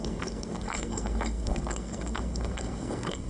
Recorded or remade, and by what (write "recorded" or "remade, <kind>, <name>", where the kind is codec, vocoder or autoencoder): remade, codec, SNAC